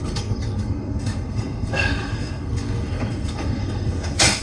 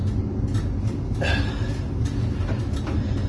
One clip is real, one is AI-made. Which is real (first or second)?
second